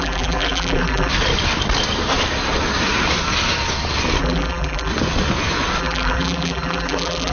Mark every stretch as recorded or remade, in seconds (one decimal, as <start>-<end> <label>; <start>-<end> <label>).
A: 0.0-1.1 remade; 1.1-4.2 recorded; 4.2-4.9 remade; 4.9-5.8 recorded; 5.8-7.3 remade

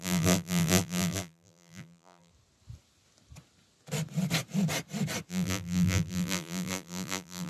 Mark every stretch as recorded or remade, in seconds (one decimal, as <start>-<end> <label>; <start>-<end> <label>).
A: 0.0-2.3 remade; 2.3-5.3 recorded; 5.3-7.5 remade